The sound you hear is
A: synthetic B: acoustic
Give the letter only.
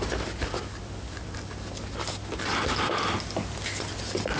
B